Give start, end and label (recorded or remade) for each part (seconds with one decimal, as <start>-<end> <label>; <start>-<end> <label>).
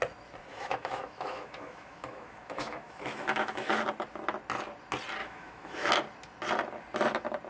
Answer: 0.0-0.5 recorded; 0.5-3.8 remade; 3.8-5.2 recorded; 5.2-5.9 remade; 5.9-7.5 recorded